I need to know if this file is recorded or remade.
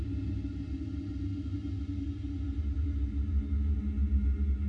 recorded